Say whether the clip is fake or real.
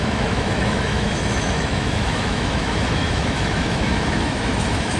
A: fake